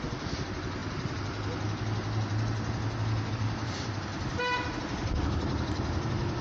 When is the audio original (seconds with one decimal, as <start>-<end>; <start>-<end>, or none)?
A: 0.8-3.3; 4.1-4.8